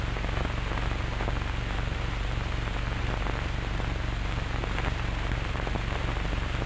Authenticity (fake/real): real